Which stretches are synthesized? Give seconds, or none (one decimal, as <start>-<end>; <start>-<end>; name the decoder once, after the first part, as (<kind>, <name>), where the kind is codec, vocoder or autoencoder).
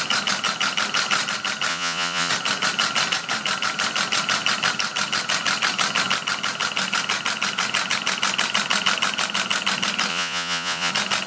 1.7-2.3 (vocoder, Vocos); 10.1-10.9